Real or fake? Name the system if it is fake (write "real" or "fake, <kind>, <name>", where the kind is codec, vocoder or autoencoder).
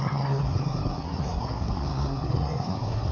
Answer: fake, codec, SNAC